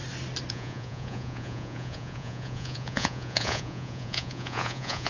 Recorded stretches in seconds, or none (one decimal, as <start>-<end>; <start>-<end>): 0.0-0.5